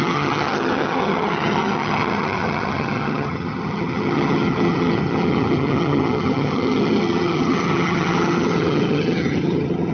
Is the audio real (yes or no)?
no